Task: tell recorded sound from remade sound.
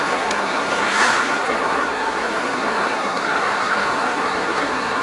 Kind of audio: remade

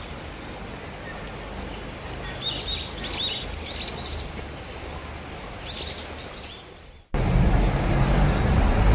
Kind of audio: recorded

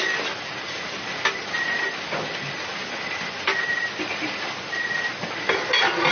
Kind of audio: recorded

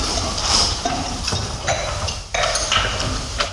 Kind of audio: recorded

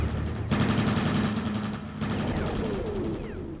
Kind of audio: recorded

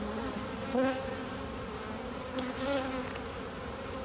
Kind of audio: recorded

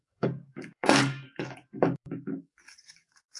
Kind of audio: remade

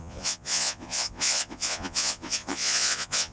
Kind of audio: remade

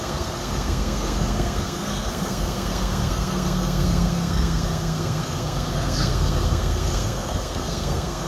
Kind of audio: remade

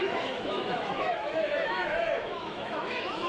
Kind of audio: remade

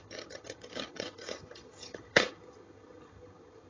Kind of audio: remade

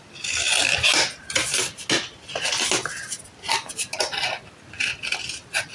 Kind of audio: recorded